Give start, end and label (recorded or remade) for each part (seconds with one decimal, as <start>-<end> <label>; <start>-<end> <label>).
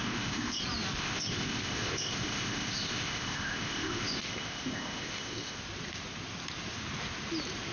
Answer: 0.0-0.6 remade; 0.6-1.0 recorded; 1.0-5.6 remade; 5.6-7.7 recorded